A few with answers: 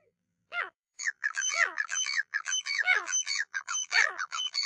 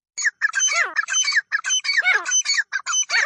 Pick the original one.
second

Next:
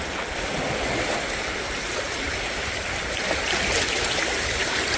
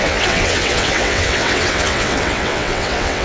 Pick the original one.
first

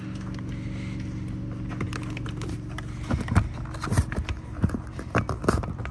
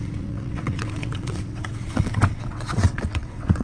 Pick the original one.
first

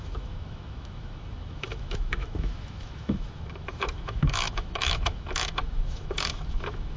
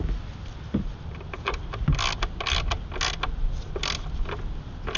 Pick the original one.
second